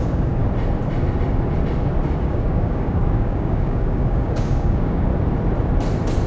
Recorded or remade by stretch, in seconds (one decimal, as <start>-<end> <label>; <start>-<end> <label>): 0.0-0.4 remade; 0.4-2.2 recorded; 2.2-5.1 remade; 5.1-6.3 recorded